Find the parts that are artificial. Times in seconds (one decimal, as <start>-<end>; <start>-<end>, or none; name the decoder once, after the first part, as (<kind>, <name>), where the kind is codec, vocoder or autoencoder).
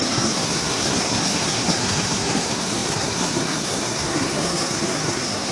0.0-5.5 (codec, SNAC)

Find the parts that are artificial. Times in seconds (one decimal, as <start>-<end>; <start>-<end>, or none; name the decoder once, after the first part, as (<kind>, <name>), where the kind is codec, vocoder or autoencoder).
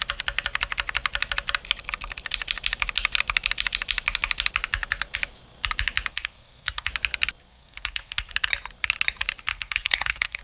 6.1-6.9 (codec, SNAC); 7.5-8.3; 9.5-10.4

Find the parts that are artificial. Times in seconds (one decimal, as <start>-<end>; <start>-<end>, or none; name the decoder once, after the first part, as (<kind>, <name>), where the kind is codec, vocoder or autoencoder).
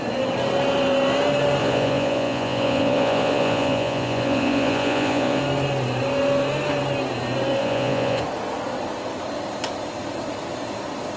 1.6-5.4 (vocoder, Vocos); 7.6-8.2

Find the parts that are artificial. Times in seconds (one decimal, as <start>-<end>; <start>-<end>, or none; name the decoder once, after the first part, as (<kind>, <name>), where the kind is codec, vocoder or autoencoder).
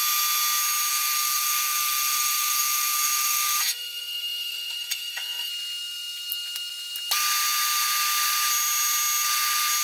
0.9-5.5 (codec, SNAC)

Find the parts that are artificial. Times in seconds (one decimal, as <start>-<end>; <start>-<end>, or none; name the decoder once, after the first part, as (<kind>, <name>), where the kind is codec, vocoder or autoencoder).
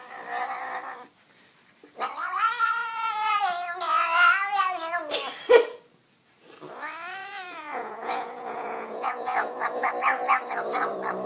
2.8-3.4 (vocoder, Vocos); 7.2-9.9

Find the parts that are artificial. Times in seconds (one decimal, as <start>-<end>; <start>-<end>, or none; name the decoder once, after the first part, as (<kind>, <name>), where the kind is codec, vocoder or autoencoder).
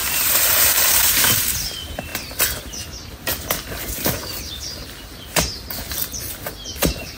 none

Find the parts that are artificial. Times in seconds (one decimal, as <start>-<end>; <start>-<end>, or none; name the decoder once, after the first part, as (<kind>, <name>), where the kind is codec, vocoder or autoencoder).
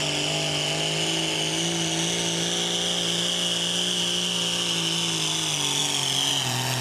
none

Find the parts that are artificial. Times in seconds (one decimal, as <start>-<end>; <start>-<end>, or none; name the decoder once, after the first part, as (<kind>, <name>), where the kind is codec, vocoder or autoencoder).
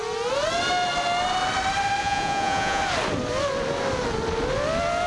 2.0-2.8 (vocoder, Vocos)